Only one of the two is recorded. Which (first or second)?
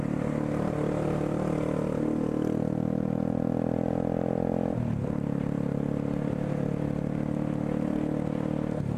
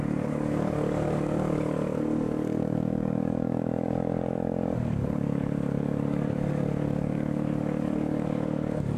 first